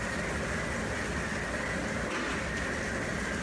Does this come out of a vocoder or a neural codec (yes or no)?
no